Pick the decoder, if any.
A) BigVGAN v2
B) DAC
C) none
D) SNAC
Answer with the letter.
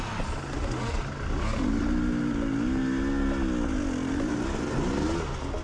C